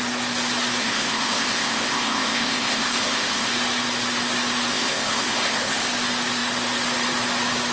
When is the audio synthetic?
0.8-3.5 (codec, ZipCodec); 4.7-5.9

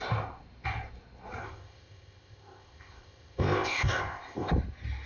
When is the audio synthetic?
1.4-4.5 (codec, ZipCodec)

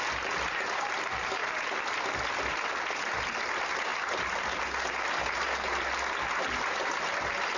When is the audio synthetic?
none

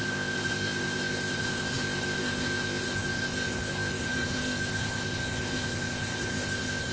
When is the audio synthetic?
0.0-6.9 (codec, ZipCodec)

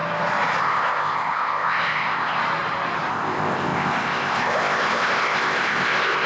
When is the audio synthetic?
0.6-2.4 (codec, ZipCodec); 3.1-6.3

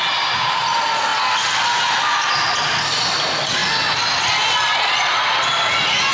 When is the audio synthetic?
none

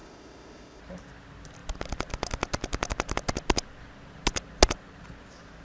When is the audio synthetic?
0.0-0.8 (codec, ZipCodec)